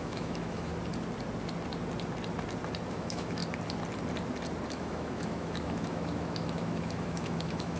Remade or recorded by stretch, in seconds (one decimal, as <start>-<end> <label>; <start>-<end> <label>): 0.0-0.7 remade; 0.7-2.9 recorded; 2.9-3.4 remade; 3.4-4.7 recorded; 4.7-7.8 remade